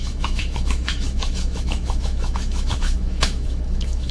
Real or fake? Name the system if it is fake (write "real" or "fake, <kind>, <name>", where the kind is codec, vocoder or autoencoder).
fake, autoencoder, DAC-VAE